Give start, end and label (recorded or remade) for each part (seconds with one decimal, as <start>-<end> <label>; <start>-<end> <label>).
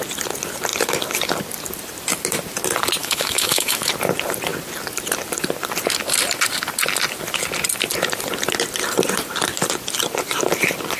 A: 0.0-3.0 recorded; 3.0-3.9 remade; 3.9-11.0 recorded